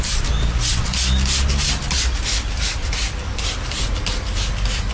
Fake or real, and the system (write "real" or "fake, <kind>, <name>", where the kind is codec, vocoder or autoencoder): real